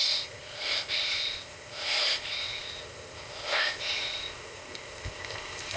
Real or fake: fake